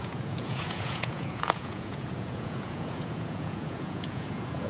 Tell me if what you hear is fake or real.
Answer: fake